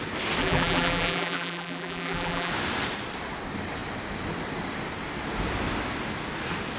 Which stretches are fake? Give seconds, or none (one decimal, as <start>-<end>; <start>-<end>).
0.4-2.5